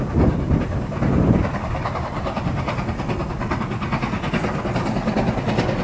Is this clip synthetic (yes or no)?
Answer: no